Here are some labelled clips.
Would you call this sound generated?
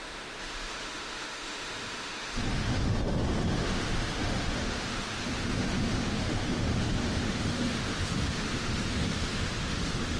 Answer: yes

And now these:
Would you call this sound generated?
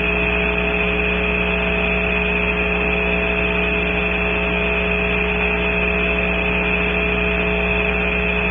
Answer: no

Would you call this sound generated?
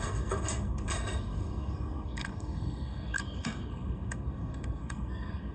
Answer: yes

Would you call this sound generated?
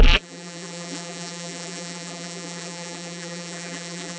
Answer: yes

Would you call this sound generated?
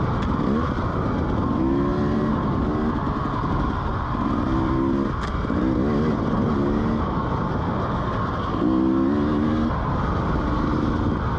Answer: no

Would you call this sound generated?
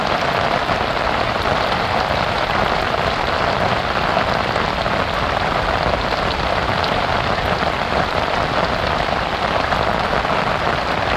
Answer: no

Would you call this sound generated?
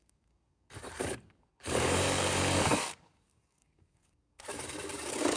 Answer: yes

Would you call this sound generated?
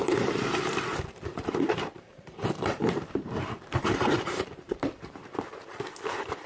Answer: yes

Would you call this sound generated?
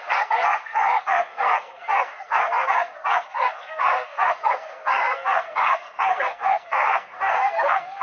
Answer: yes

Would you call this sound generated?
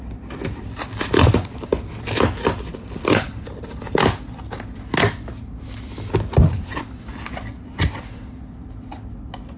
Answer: no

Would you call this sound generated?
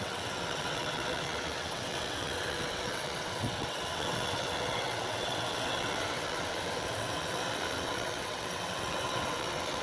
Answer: yes